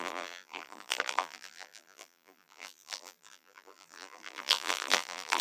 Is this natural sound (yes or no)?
no